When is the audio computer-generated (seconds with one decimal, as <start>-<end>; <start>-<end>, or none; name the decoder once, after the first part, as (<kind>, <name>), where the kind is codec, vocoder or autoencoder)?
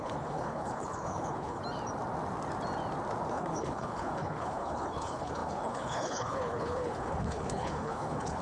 0.0-1.6 (codec, HILCodec); 3.3-8.4